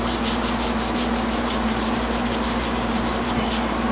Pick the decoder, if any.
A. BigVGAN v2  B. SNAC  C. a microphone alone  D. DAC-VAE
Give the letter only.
C